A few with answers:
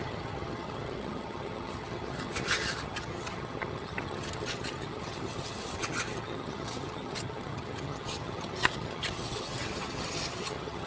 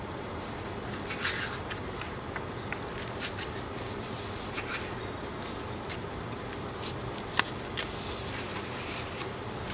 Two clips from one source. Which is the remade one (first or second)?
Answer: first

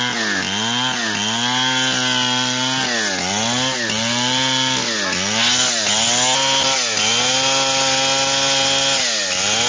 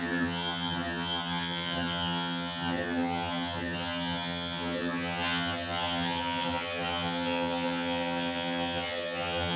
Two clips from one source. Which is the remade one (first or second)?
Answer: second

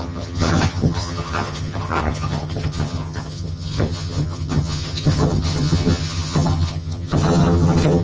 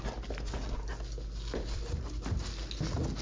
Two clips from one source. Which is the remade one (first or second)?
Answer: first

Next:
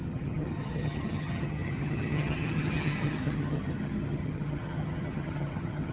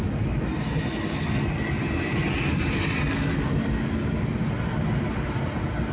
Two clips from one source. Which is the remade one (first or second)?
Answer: first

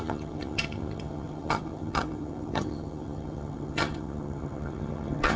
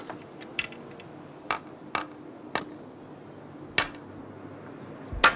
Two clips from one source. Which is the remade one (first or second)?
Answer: first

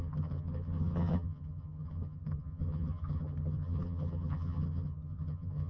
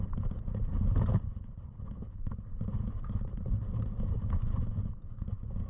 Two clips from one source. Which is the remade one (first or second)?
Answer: first